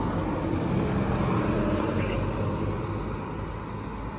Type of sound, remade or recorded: recorded